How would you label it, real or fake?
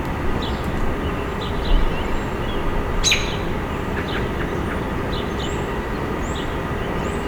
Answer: real